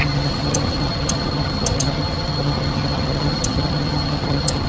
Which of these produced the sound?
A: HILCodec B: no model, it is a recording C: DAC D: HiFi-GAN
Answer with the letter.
D